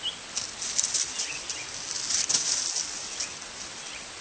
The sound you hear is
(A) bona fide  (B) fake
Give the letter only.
A